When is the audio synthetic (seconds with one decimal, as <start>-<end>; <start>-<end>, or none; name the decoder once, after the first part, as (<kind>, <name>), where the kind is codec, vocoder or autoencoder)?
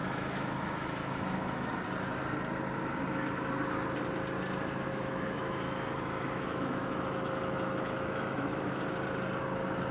0.0-1.7 (autoencoder, DAC-VAE); 4.9-8.8